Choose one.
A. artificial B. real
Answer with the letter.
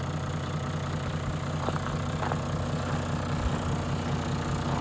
B